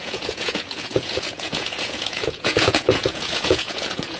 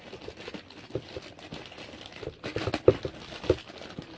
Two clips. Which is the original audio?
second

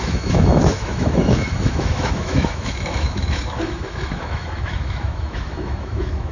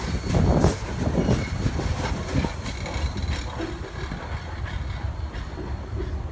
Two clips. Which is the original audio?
second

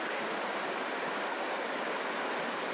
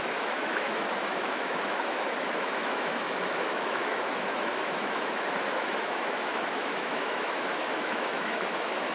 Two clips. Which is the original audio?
first